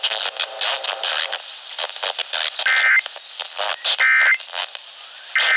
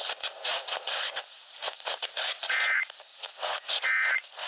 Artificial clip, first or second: second